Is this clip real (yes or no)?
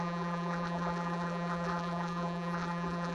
no